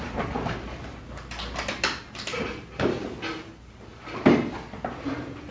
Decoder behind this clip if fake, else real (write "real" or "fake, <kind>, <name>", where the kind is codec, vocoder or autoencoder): real